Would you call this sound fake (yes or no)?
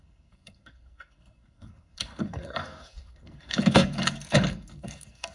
yes